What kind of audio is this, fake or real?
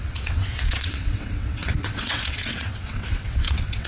fake